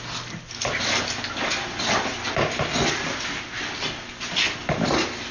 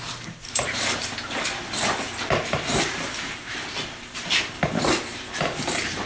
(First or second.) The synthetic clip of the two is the second